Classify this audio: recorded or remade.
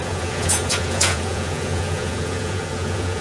remade